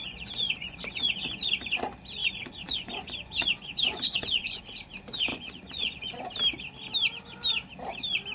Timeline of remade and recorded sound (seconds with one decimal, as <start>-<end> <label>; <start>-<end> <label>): 0.0-1.4 remade; 1.4-2.2 recorded; 2.2-4.6 remade; 4.6-5.3 recorded; 5.3-6.3 remade; 6.3-8.3 recorded

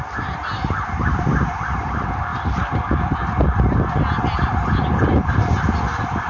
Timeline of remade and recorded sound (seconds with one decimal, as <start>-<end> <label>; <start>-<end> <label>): 0.0-6.3 recorded

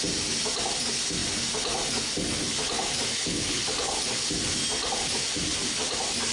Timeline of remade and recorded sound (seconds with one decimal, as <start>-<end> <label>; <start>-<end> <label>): 0.0-3.1 recorded; 3.1-4.3 remade; 4.3-6.3 recorded

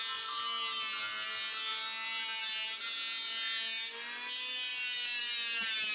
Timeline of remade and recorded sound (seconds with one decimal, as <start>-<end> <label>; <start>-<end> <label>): 0.0-5.9 recorded

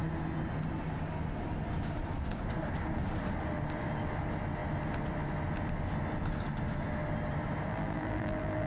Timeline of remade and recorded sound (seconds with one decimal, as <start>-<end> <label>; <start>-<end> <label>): 0.0-7.7 recorded; 7.7-8.7 remade

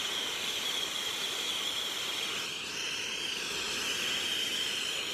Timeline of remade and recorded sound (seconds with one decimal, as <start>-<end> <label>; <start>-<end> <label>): 0.0-1.5 remade; 1.5-4.6 recorded; 4.6-5.1 remade

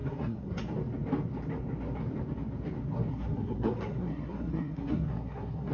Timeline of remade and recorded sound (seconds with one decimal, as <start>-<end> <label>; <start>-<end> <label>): 0.0-0.6 remade; 0.6-3.1 recorded; 3.1-5.7 remade